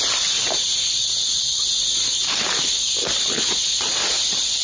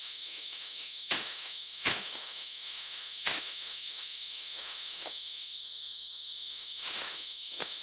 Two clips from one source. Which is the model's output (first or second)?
second